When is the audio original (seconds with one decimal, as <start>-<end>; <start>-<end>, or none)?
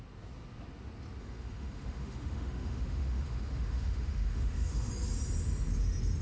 0.0-1.2; 4.9-6.2